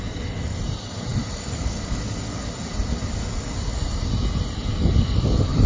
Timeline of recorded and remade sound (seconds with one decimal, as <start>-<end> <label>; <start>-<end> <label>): 0.0-5.7 recorded